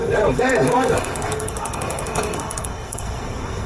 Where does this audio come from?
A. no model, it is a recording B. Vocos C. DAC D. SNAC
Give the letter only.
D